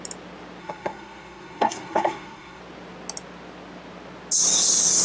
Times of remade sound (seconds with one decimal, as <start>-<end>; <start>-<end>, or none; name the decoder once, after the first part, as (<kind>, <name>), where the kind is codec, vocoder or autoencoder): 0.6-2.6 (codec, SNAC)

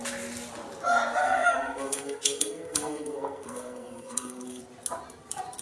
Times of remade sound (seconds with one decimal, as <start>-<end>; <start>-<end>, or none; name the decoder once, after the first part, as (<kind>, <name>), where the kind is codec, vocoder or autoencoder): 1.2-4.6 (codec, SNAC)

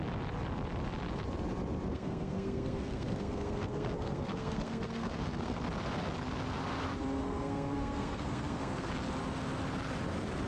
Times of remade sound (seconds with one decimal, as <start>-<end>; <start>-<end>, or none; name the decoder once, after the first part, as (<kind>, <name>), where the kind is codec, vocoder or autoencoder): 1.9-5.6 (codec, SNAC); 7.2-8.9

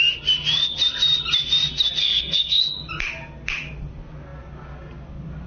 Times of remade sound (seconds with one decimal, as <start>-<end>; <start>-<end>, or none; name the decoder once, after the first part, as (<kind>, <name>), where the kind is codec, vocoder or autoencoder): 2.0-2.6 (codec, SNAC)

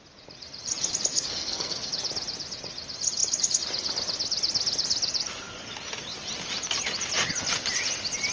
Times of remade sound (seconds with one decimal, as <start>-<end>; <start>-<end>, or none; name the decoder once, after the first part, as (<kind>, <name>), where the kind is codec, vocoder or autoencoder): 1.1-1.9 (codec, SNAC)

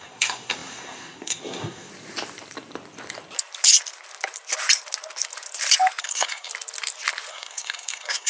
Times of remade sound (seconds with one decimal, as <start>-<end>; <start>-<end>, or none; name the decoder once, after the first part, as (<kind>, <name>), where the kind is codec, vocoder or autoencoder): 0.0-1.9 (codec, SNAC); 6.0-6.5; 7.3-8.3